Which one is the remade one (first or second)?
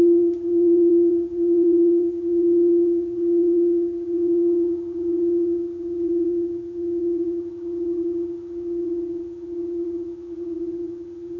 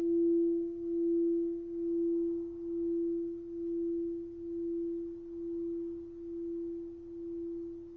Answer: first